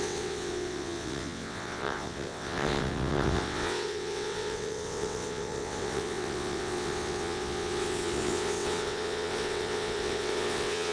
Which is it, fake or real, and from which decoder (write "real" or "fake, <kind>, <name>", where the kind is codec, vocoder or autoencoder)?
fake, vocoder, WaveNeXt